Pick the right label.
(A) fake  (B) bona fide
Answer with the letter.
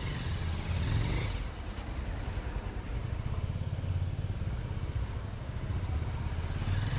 B